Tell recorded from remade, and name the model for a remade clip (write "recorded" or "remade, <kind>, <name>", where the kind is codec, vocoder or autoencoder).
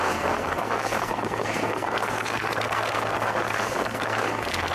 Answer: remade, codec, SNAC